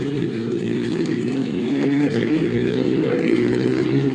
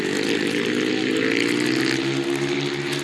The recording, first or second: second